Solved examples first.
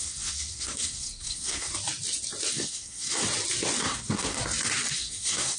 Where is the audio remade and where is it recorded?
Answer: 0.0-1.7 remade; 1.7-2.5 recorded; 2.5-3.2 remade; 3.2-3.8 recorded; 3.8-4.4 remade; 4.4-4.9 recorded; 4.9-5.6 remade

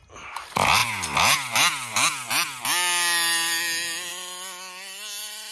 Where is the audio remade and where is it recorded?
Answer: 0.0-5.5 recorded